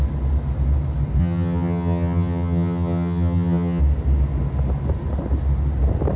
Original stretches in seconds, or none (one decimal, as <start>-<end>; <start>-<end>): 0.0-1.2; 3.8-6.2

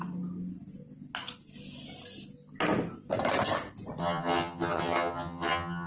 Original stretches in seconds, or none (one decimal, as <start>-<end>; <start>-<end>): 0.0-4.0

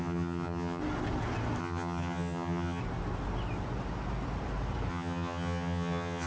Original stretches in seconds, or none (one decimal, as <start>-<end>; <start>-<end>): 0.8-1.6; 2.8-4.9

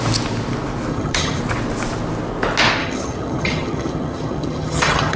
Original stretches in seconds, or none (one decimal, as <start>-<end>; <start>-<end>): 0.0-0.9; 1.4-2.8